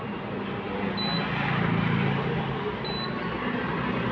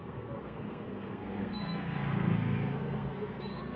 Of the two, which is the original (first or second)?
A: first